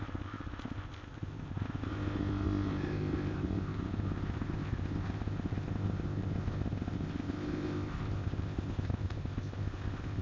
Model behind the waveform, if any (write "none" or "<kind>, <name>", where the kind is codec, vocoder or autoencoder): codec, ZipCodec